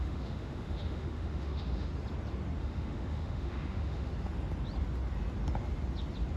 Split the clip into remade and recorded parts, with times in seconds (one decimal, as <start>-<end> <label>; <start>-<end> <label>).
0.0-1.9 remade; 1.9-2.6 recorded; 2.6-4.1 remade; 4.1-6.4 recorded

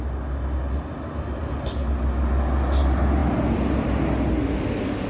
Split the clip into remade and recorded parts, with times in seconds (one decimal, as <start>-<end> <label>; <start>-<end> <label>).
0.0-5.1 recorded

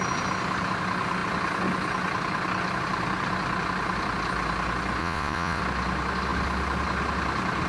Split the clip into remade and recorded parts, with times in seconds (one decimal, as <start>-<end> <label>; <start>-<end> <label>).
0.0-5.0 recorded; 5.0-5.6 remade; 5.6-7.7 recorded

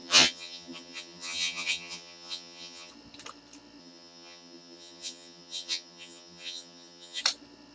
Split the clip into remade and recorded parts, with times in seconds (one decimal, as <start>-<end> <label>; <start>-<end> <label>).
0.0-2.9 remade; 2.9-3.8 recorded; 3.8-7.2 remade; 7.2-7.7 recorded

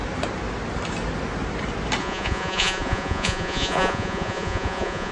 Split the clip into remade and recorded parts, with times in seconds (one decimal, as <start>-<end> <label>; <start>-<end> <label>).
0.0-2.0 recorded; 2.0-5.1 remade